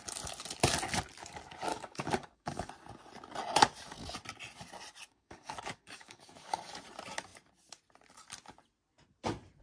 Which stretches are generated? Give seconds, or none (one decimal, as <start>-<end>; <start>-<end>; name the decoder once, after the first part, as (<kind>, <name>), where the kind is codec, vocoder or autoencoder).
1.7-2.7 (codec, DAC); 5.1-6.7